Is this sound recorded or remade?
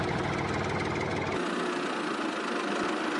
recorded